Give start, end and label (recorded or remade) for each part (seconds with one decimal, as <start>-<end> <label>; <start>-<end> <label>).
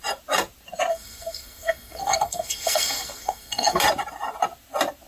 0.0-0.9 recorded; 0.9-3.8 remade; 3.8-5.1 recorded